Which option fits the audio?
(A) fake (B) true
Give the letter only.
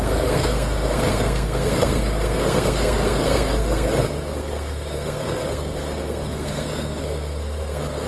A